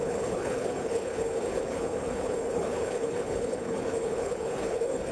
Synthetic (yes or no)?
yes